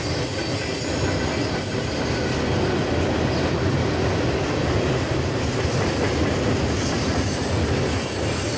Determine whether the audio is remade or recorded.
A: recorded